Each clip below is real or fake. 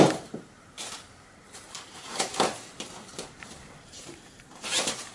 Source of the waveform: fake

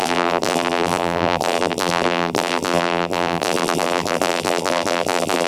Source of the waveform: fake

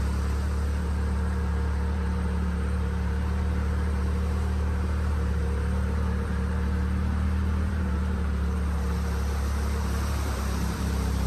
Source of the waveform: fake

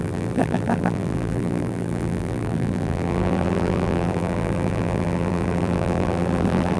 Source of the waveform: fake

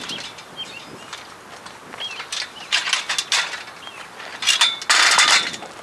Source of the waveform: real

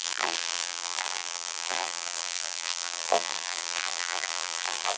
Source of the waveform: fake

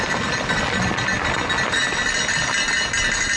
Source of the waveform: real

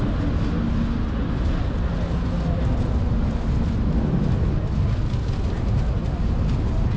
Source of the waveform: real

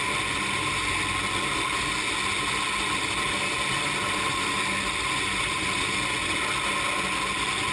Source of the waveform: real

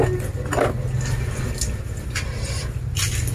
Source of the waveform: real